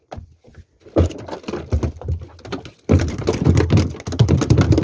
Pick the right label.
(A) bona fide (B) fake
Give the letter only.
A